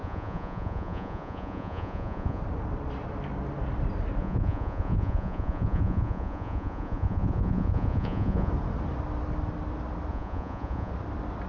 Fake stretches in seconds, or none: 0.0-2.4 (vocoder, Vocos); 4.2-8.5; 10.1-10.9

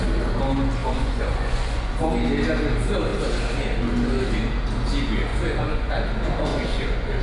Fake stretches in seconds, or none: 0.8-1.9 (vocoder, Vocos); 5.3-5.9; 6.5-7.2